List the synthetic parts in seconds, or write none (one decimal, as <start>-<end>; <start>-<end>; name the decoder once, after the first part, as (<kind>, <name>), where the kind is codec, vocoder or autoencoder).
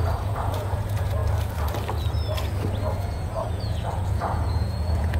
0.0-1.2 (vocoder, Vocos); 3.0-5.2